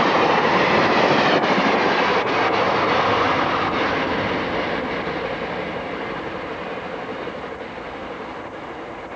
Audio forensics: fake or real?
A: real